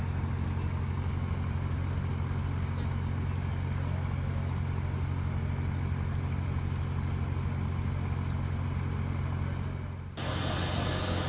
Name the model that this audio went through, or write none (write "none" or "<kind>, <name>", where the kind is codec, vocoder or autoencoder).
none